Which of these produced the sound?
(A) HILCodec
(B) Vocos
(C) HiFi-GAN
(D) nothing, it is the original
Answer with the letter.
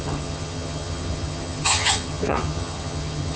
C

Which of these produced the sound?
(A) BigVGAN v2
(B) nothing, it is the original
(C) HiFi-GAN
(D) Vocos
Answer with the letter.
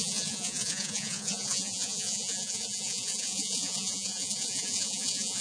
D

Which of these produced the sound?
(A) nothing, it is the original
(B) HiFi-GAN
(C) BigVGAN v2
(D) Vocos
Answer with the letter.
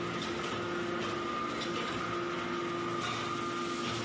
A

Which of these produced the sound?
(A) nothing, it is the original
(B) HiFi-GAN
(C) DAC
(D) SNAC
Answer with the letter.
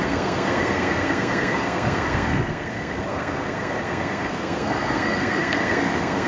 D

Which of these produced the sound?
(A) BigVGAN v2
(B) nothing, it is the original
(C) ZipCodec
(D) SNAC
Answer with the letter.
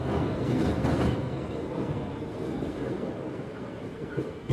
D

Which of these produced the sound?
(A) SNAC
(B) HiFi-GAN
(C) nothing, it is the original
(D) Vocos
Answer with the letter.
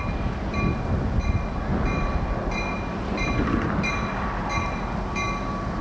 C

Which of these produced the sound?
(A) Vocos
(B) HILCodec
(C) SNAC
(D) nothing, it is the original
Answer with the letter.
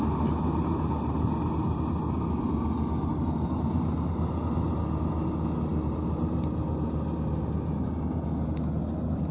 D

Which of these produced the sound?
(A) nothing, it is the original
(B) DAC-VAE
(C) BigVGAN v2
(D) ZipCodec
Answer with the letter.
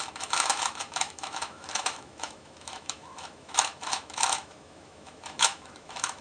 B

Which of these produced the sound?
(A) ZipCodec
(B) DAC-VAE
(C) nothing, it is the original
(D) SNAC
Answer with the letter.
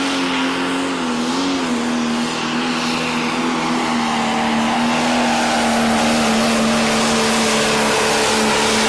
C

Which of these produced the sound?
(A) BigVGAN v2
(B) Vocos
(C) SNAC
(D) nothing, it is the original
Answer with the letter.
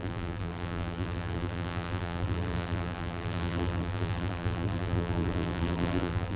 A